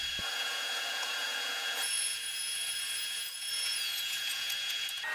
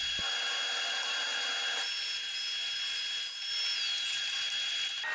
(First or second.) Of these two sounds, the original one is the second